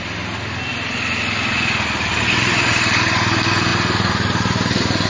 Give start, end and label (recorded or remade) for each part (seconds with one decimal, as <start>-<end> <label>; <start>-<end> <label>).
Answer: 0.0-5.1 recorded